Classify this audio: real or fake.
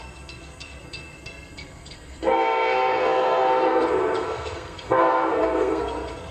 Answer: fake